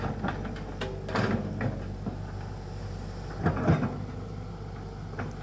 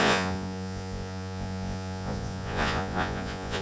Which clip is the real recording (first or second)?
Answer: first